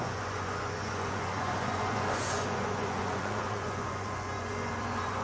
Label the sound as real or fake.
fake